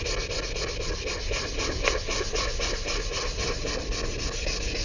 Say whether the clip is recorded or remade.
recorded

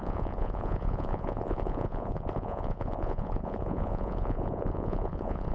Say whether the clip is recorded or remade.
remade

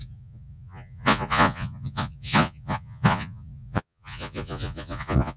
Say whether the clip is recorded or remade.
remade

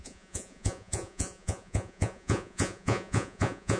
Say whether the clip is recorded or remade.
remade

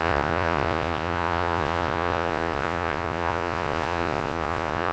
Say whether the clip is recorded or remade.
remade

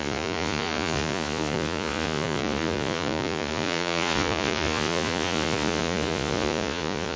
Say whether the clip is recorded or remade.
remade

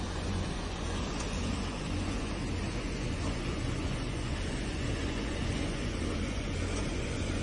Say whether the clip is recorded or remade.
remade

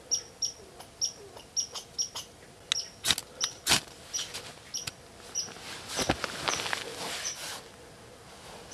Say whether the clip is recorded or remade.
recorded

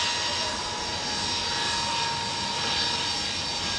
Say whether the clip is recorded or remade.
recorded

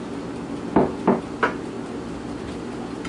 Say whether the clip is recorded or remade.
recorded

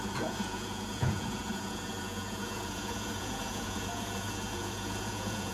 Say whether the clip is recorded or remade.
remade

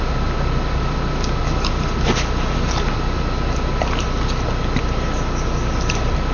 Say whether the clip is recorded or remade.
recorded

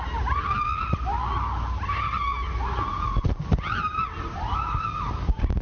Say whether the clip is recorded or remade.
recorded